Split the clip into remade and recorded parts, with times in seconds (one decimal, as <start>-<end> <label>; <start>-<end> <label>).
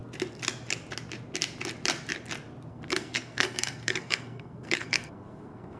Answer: 0.0-2.7 recorded; 2.7-5.8 remade